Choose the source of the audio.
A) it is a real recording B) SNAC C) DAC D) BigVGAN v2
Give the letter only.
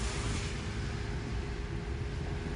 A